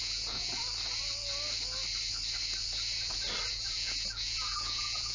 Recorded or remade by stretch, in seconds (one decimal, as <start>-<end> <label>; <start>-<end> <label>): 0.0-0.6 remade; 0.6-3.5 recorded; 3.5-5.1 remade

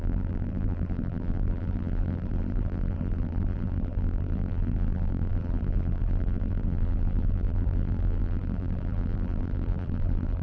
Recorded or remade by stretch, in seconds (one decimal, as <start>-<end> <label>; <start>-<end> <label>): 0.0-10.4 remade

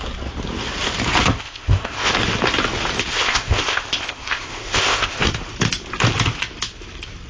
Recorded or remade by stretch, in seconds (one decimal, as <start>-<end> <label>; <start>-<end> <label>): 0.0-1.4 recorded; 1.4-2.1 remade; 2.1-3.1 recorded; 3.1-5.2 remade; 5.2-7.3 recorded

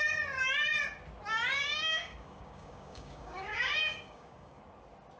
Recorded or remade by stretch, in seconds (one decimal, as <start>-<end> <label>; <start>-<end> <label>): 0.0-1.5 recorded; 1.5-4.6 remade; 4.6-5.2 recorded

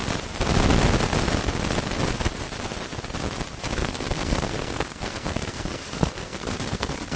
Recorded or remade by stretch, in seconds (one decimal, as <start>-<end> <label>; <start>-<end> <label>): 0.0-3.8 recorded; 3.8-7.2 remade

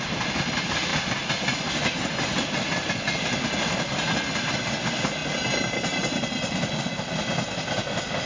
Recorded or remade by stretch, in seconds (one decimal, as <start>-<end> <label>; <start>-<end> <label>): 0.0-8.3 recorded

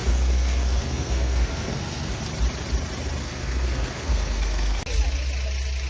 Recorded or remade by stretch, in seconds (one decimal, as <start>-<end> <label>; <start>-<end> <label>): 0.0-2.2 remade; 2.2-3.2 recorded; 3.2-4.8 remade; 4.8-5.9 recorded